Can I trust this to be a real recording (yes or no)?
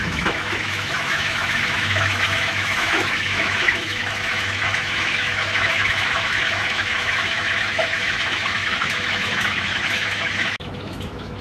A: no